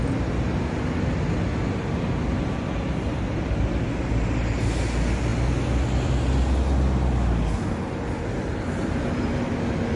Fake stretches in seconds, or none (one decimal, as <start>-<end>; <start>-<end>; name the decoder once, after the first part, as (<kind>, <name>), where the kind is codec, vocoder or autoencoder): none